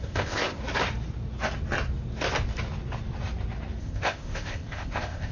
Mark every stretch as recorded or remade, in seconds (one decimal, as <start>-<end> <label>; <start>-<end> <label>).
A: 0.0-0.6 remade; 0.6-3.8 recorded; 3.8-5.3 remade